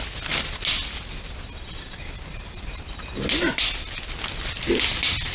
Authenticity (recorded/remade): recorded